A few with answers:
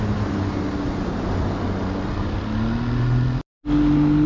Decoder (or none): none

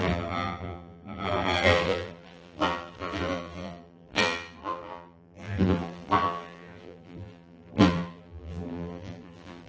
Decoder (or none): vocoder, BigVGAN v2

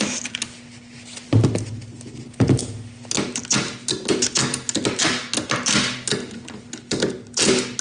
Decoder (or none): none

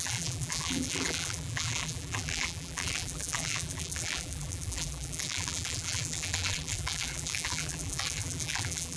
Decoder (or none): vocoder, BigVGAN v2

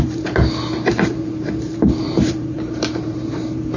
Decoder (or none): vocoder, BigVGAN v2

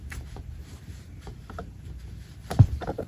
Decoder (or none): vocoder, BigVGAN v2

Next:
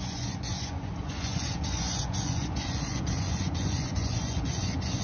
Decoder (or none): vocoder, Vocos